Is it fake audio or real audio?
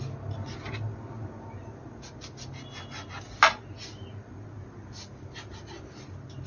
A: real